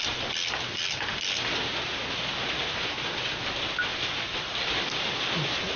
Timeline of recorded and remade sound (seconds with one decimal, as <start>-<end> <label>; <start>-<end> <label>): 0.0-3.9 recorded; 3.9-5.1 remade; 5.1-5.8 recorded